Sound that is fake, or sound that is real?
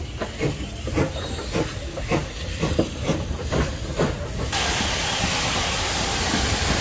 real